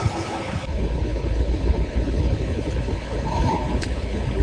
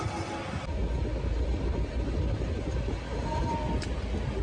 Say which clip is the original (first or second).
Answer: second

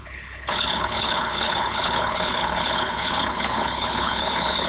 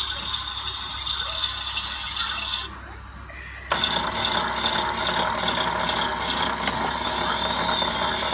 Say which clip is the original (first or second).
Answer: second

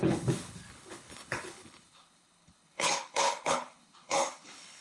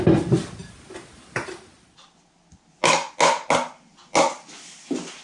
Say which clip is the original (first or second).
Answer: second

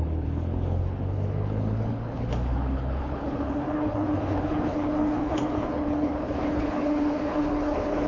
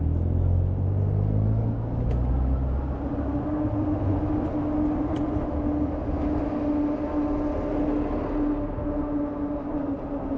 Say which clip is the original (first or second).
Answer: second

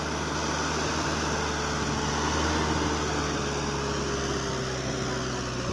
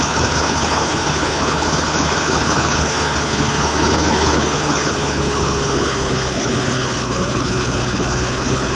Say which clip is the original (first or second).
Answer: first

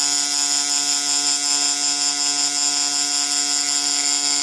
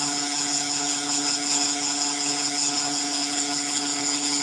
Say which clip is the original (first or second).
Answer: first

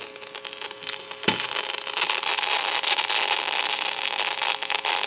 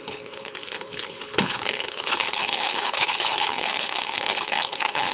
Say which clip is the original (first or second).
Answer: first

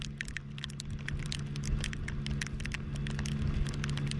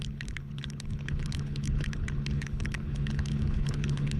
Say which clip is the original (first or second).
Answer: first